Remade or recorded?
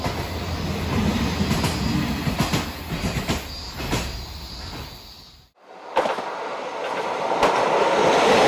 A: recorded